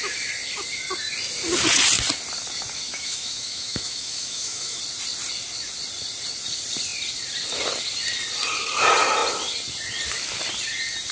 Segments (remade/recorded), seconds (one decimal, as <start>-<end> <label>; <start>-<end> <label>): 0.0-2.9 recorded; 2.9-4.8 remade; 4.8-11.1 recorded